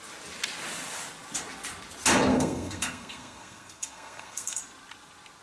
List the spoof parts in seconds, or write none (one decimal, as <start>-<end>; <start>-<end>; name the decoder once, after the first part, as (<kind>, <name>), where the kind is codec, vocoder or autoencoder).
2.3-4.6 (codec, SNAC)